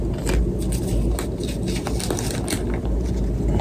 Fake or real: real